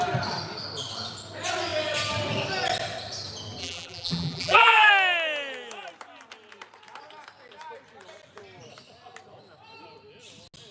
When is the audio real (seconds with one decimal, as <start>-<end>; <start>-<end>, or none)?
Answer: 0.0-3.6; 4.9-10.7